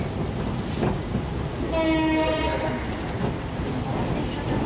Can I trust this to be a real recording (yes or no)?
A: yes